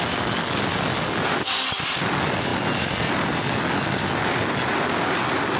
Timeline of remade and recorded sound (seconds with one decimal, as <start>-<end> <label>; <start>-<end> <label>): 0.0-5.6 recorded